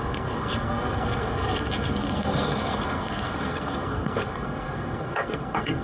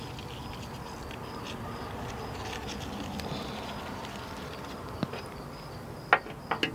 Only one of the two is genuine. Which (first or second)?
second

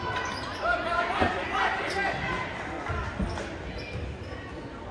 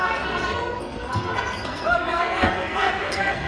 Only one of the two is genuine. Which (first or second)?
first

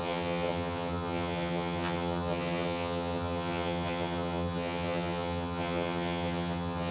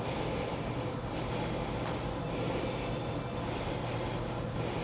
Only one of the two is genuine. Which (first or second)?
second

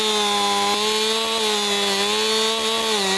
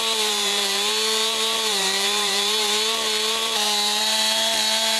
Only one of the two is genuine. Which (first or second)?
first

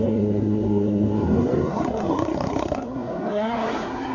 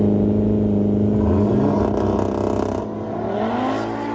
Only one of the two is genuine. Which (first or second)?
second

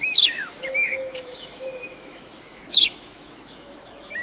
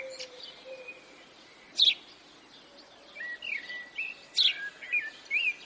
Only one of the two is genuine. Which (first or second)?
second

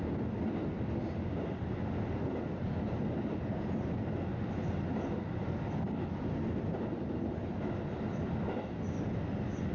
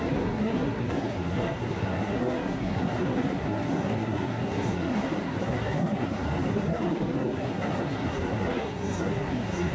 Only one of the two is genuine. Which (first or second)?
first